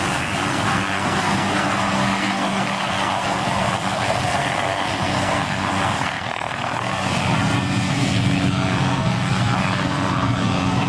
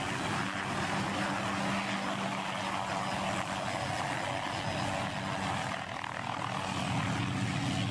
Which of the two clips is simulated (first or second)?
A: first